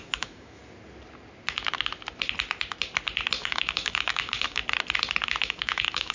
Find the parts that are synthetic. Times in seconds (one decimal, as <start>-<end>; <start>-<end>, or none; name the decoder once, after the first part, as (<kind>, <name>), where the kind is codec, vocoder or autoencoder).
0.0-0.6 (autoencoder, DAC-VAE); 3.4-4.6; 5.4-6.1